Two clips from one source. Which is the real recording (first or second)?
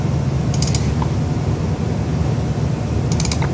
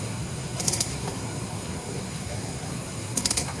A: first